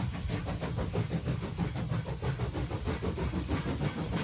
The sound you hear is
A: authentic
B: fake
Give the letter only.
A